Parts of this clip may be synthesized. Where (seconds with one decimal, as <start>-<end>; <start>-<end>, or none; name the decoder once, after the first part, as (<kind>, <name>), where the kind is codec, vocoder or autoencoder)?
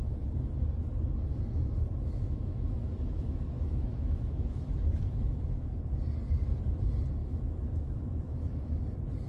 1.3-5.7 (autoencoder, DAC-VAE); 7.2-8.8